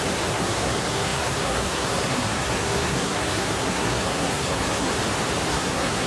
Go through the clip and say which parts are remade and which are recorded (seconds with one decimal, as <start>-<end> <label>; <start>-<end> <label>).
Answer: 0.0-4.9 remade; 4.9-5.5 recorded; 5.5-6.1 remade